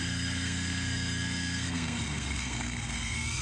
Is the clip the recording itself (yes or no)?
no